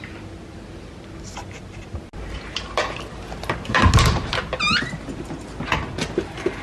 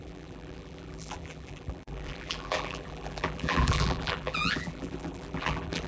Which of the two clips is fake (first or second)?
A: second